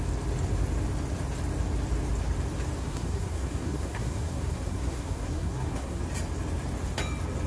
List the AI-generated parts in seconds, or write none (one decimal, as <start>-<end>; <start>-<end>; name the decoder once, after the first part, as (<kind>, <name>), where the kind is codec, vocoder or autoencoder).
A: 2.8-6.0 (codec, SNAC)

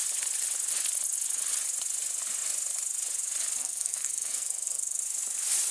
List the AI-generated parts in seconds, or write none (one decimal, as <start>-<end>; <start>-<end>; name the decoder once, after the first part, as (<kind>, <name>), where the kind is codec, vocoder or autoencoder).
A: 3.6-5.0 (codec, SNAC)